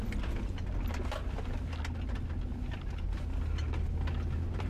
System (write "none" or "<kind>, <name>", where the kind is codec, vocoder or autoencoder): none